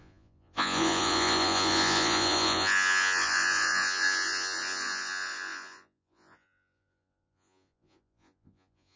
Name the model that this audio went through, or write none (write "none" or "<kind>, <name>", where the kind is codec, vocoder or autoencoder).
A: vocoder, Vocos